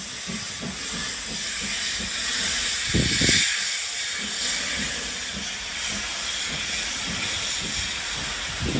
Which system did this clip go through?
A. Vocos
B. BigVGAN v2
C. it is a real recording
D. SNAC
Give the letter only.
C